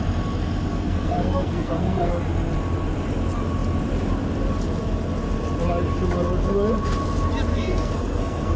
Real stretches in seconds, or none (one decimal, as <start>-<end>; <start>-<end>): 0.0-0.7; 2.1-7.5